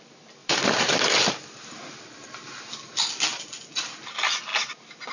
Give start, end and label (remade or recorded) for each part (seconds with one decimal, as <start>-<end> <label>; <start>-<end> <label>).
0.0-0.4 recorded; 0.4-1.3 remade; 1.3-3.3 recorded; 3.3-3.9 remade; 3.9-5.1 recorded